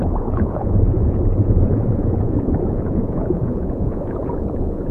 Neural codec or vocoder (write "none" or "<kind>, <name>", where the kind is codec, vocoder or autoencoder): vocoder, Vocos